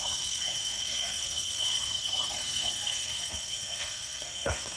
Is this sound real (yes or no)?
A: no